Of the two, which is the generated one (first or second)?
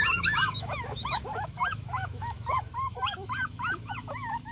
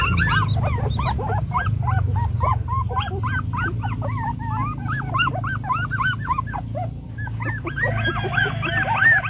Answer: first